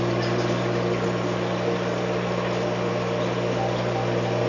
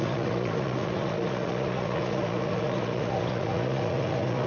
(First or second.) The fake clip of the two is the second